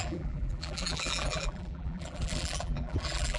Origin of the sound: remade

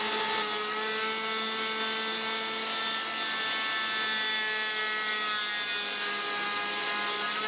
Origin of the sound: recorded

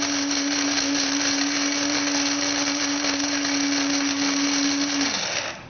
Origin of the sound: recorded